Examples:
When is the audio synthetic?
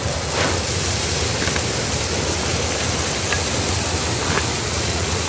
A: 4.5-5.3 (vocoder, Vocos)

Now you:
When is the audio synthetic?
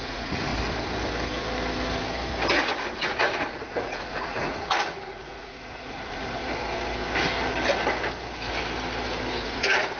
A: 0.0-0.5 (vocoder, Vocos); 2.6-6.4; 9.4-10.0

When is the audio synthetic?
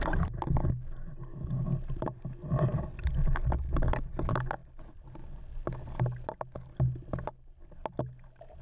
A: none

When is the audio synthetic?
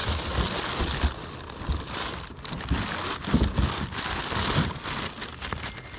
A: none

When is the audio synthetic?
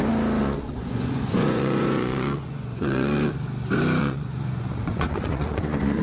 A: 0.4-3.3 (vocoder, Vocos); 4.0-6.0